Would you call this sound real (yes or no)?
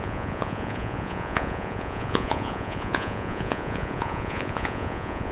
no